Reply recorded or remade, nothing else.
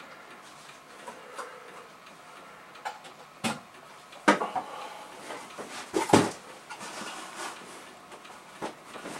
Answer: recorded